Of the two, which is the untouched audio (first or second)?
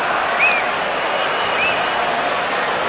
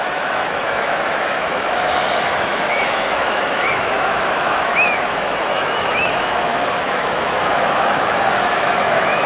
first